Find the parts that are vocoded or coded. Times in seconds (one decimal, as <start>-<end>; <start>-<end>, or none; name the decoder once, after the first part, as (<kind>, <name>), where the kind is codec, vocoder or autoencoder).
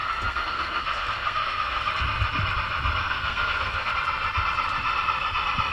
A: 0.0-1.9 (codec, SNAC); 3.0-3.9